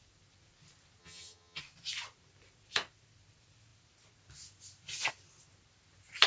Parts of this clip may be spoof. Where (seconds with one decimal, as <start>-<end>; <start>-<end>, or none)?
1.0-1.6